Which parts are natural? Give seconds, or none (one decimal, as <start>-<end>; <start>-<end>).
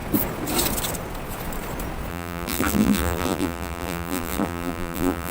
0.0-2.1